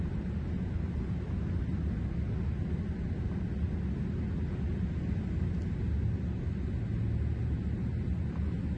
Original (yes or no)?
yes